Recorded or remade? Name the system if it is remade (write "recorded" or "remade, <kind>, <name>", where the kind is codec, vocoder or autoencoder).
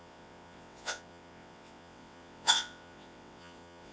remade, vocoder, WaveNeXt